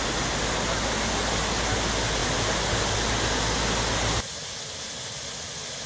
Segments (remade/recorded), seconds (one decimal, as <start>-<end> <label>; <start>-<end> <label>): 0.0-5.9 recorded